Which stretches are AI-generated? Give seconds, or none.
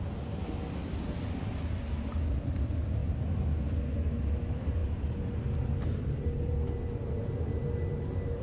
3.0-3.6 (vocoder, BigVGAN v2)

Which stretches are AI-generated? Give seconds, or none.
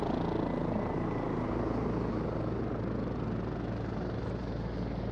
none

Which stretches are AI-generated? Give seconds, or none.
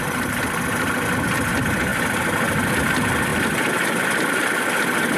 none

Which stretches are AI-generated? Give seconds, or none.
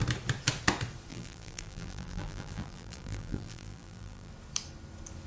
1.1-4.3 (vocoder, BigVGAN v2)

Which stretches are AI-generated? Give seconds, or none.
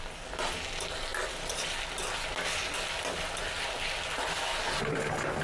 none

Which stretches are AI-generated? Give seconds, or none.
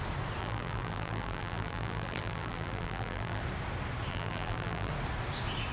0.4-3.4 (vocoder, BigVGAN v2); 4.1-4.9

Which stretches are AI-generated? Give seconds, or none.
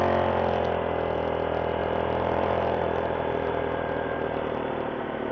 1.8-5.3 (vocoder, BigVGAN v2)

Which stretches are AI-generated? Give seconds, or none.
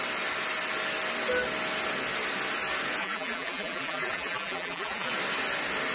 3.0-5.1 (vocoder, BigVGAN v2)